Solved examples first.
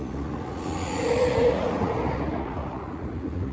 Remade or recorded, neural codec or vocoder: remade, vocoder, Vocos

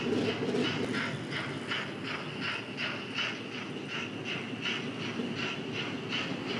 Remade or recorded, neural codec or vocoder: recorded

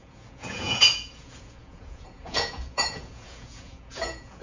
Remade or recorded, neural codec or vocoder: remade, vocoder, Vocos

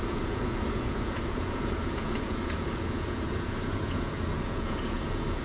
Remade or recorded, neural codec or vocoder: remade, vocoder, Vocos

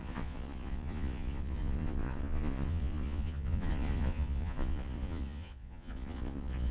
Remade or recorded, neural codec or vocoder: remade, vocoder, Vocos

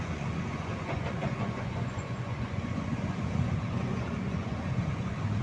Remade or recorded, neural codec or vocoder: remade, vocoder, Vocos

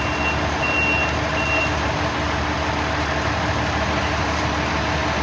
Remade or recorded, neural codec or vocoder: recorded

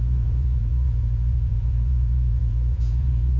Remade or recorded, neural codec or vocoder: remade, vocoder, Vocos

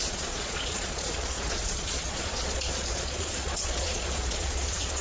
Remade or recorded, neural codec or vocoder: remade, vocoder, Vocos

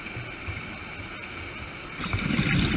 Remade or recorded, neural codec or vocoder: recorded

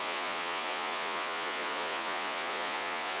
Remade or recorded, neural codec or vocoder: remade, vocoder, Vocos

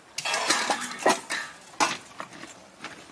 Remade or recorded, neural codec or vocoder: recorded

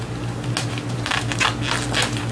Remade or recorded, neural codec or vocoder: recorded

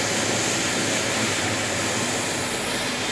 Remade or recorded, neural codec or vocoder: recorded